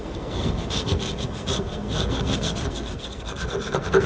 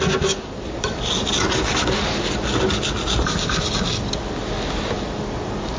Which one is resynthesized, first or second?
first